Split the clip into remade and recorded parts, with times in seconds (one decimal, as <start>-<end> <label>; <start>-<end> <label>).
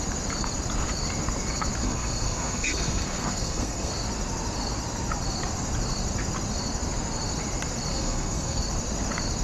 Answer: 0.0-1.8 recorded; 1.8-3.9 remade; 3.9-7.9 recorded; 7.9-8.6 remade; 8.6-9.4 recorded